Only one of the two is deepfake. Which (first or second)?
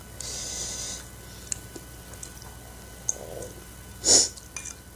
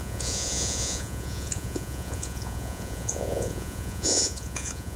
second